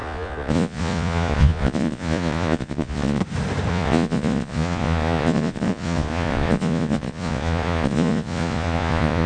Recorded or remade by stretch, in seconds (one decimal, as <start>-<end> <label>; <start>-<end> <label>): 0.0-3.2 remade; 3.2-3.7 recorded; 3.7-9.3 remade